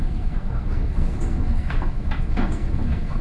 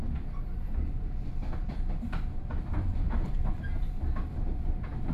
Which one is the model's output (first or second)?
first